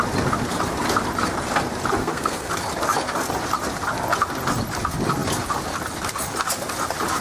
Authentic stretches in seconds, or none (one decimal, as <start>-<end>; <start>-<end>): 0.0-2.0; 2.5-7.2